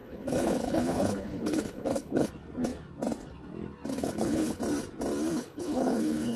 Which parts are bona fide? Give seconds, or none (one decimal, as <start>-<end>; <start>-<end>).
2.3-3.9; 4.6-5.3